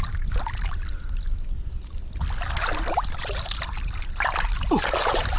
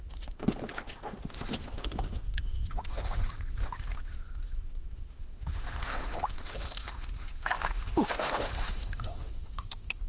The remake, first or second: second